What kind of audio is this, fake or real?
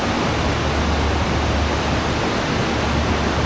real